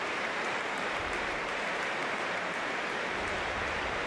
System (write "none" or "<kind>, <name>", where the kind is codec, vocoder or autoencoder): vocoder, BigVGAN v2